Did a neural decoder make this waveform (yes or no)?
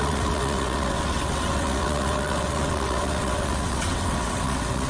yes